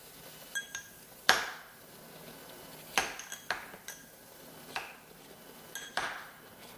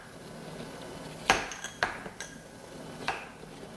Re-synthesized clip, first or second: second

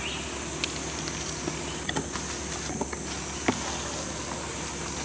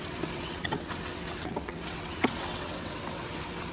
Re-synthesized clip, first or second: second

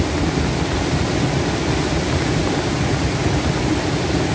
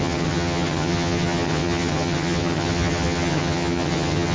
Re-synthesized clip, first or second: second